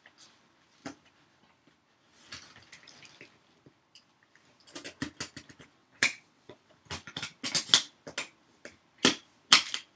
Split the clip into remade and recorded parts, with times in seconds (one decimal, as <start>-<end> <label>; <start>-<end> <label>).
0.0-5.8 recorded; 5.8-6.7 remade; 6.7-10.0 recorded